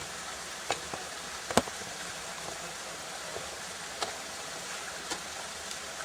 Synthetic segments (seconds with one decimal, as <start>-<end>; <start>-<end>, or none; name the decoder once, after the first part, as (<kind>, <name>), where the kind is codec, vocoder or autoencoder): 5.1-6.0 (vocoder, BigVGAN v2)